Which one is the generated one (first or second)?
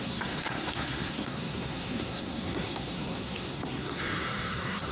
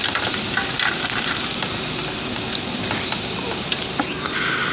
first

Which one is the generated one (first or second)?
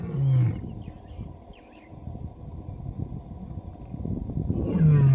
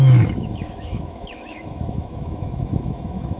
second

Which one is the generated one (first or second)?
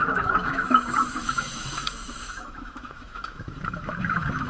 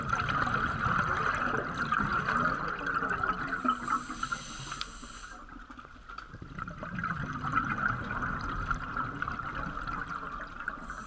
first